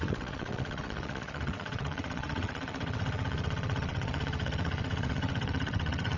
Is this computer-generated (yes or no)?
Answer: yes